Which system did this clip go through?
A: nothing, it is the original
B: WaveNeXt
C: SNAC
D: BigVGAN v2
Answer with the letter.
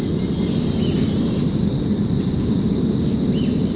A